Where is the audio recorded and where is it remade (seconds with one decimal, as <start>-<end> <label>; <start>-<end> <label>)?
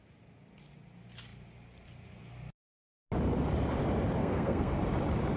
0.0-4.2 recorded; 4.2-4.8 remade; 4.8-5.4 recorded